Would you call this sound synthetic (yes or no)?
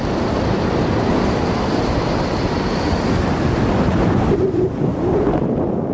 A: no